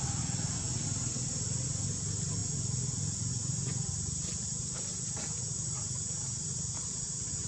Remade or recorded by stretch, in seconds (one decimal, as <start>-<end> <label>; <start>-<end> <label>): 0.0-7.5 recorded